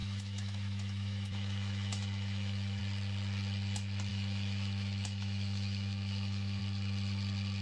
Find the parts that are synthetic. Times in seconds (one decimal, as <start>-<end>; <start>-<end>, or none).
0.0-2.8; 4.1-6.6